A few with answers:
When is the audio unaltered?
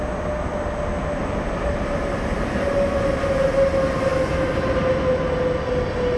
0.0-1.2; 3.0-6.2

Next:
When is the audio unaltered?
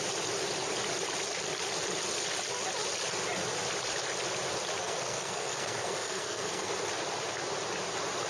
0.0-4.8; 6.7-8.3